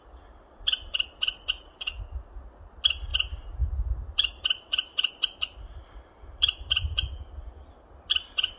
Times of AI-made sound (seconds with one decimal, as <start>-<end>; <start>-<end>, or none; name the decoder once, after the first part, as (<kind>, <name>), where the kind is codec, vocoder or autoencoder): none